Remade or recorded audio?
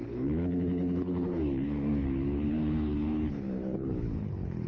remade